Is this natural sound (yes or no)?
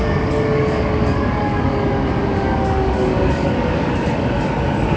no